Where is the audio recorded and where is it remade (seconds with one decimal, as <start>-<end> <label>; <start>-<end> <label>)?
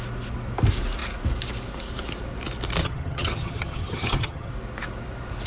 0.0-2.8 recorded; 2.8-4.5 remade; 4.5-5.5 recorded